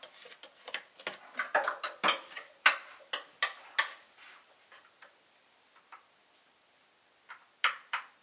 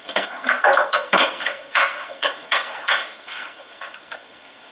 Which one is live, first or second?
first